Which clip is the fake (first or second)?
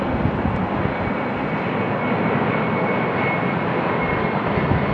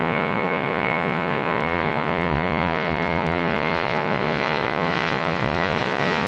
second